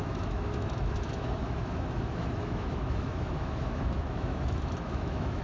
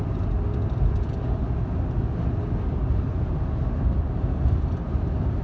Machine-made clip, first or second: first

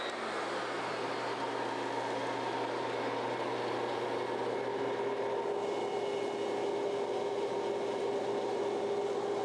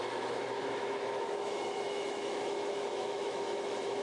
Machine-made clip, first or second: second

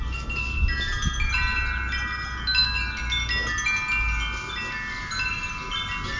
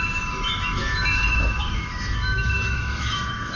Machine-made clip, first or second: second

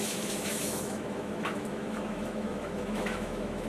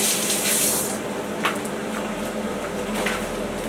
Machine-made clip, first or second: first